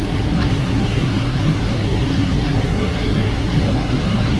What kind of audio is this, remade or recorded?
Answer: remade